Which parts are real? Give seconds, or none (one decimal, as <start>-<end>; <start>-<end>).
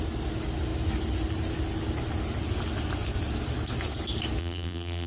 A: 0.0-4.4